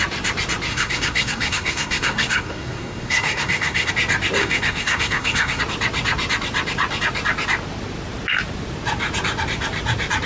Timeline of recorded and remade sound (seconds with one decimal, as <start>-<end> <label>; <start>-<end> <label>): 0.0-0.7 recorded; 0.7-3.9 remade; 3.9-4.4 recorded; 4.4-5.6 remade; 5.6-10.3 recorded